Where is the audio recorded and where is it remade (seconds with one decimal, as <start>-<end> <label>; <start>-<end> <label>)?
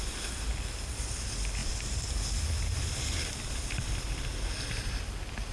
0.0-5.5 recorded